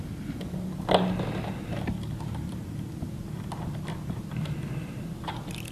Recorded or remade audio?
recorded